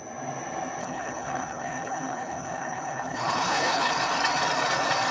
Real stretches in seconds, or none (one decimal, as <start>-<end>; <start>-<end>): 0.0-0.8; 3.9-5.1